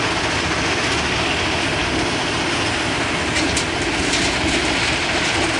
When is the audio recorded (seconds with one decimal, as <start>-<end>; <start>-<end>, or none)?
0.0-5.6